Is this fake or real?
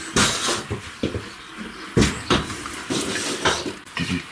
real